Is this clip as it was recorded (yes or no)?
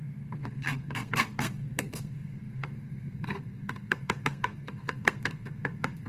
no